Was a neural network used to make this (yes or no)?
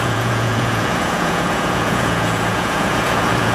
yes